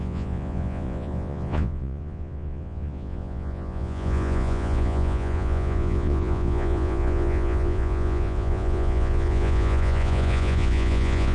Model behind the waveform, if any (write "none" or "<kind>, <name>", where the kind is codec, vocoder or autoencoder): vocoder, Vocos